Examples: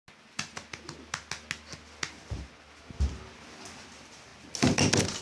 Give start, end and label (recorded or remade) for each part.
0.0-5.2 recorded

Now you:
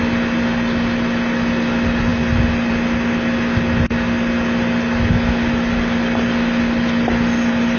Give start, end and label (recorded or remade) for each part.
0.0-7.8 recorded

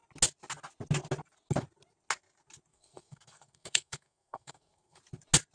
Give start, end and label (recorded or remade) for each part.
0.0-2.7 recorded; 2.7-5.0 remade; 5.0-5.5 recorded

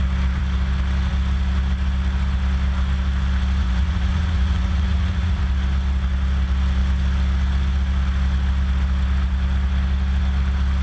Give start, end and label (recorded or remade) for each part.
0.0-3.6 recorded; 3.6-5.4 remade; 5.4-10.8 recorded

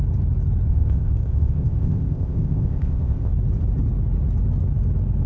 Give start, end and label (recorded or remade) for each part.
0.0-0.7 recorded; 0.7-3.3 remade; 3.3-5.3 recorded

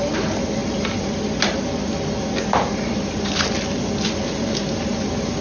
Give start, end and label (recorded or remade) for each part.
0.0-5.4 recorded

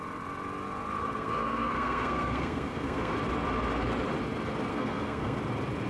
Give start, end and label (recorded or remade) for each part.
0.0-1.0 recorded; 1.0-3.1 remade; 3.1-4.7 recorded; 4.7-5.4 remade; 5.4-5.9 recorded